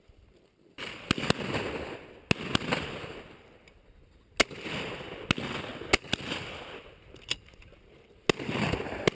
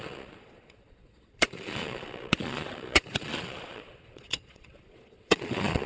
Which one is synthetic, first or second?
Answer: second